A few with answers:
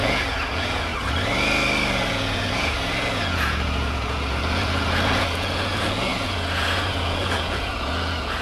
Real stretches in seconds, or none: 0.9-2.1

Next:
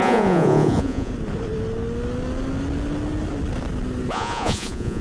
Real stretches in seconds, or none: 1.1-4.1

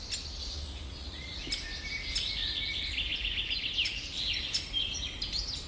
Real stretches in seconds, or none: 0.0-0.4; 1.4-5.7

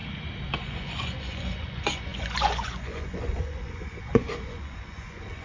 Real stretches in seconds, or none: 0.0-0.6

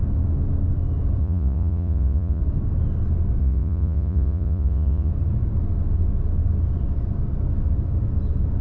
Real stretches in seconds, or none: 0.0-1.2; 2.4-3.4; 5.1-8.6

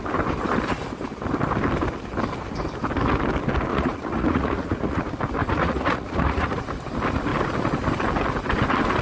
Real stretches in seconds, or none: 0.0-3.7; 5.0-5.4; 6.7-9.0